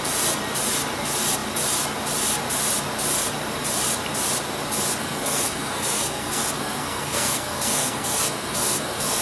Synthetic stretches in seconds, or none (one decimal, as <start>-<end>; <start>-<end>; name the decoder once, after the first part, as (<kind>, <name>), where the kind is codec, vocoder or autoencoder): 5.0-9.2 (codec, SNAC)